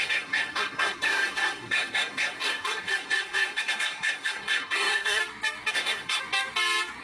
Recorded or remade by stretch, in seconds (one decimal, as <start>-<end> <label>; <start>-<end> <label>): 0.0-5.2 remade; 5.2-5.7 recorded; 5.7-6.2 remade; 6.2-7.0 recorded